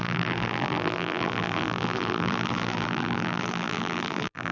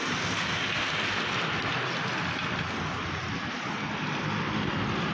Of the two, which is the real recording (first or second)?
second